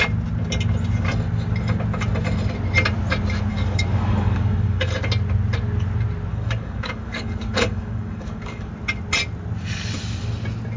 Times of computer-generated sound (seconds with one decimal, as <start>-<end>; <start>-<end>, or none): 3.5-4.9; 6.3-8.7